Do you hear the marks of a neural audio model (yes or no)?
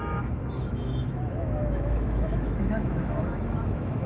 yes